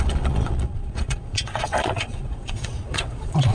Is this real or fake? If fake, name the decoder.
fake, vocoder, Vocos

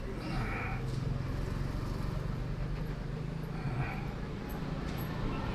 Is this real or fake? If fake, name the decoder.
real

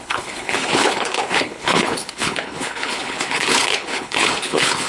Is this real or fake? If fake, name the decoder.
fake, codec, HILCodec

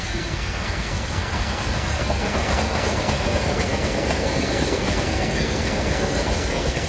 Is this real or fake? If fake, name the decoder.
fake, codec, SNAC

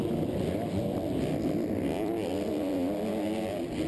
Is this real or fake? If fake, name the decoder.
real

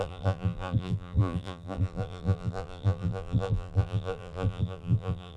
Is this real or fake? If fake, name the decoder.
fake, vocoder, BigVGAN v2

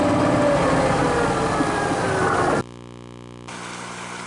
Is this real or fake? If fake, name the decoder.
real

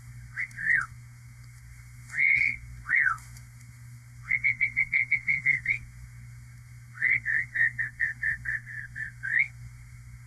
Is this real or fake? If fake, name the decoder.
fake, codec, SNAC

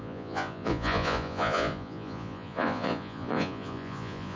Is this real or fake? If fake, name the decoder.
fake, vocoder, Vocos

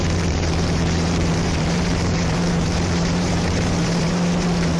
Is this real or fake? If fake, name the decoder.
fake, vocoder, BigVGAN v2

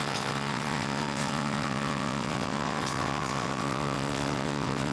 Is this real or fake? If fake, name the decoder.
fake, vocoder, WaveNeXt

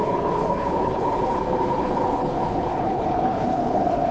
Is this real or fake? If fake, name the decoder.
fake, codec, HILCodec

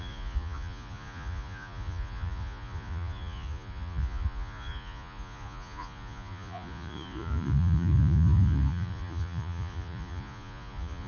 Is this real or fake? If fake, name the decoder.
fake, vocoder, Vocos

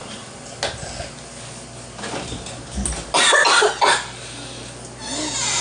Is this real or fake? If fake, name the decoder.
real